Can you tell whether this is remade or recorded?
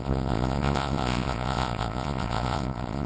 remade